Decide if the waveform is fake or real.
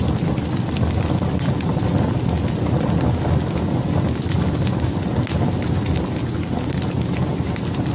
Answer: real